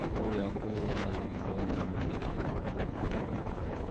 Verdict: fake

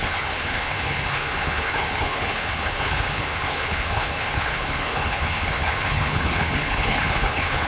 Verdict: fake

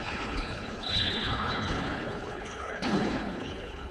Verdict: fake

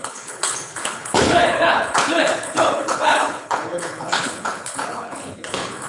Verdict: fake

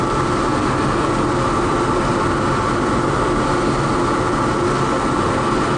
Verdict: real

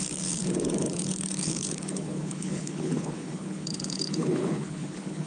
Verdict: fake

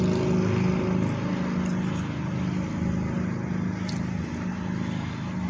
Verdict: real